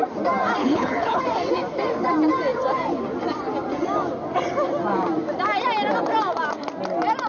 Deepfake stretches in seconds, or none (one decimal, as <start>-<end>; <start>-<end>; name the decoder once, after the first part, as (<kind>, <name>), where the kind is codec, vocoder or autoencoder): 0.6-1.2 (codec, HILCodec)